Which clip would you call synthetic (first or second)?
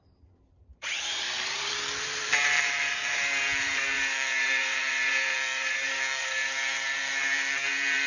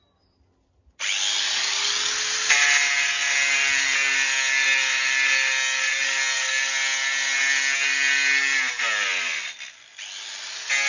first